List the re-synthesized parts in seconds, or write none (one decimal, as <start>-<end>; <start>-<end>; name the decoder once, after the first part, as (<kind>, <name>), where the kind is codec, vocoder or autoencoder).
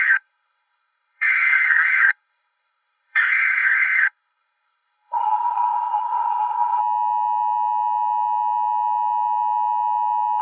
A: 0.0-6.8 (codec, SNAC)